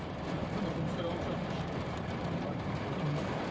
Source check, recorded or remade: remade